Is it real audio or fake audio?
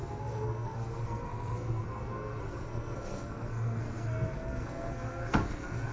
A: fake